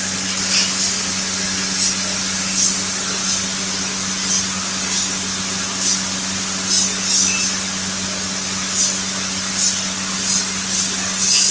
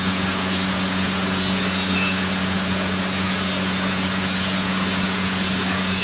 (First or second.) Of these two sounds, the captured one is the first